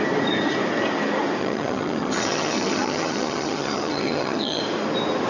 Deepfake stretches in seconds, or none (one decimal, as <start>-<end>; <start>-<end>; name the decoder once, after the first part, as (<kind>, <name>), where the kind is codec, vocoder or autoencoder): 1.4-4.6 (vocoder, HiFi-GAN)